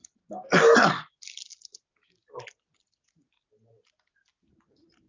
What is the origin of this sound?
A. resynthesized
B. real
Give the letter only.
B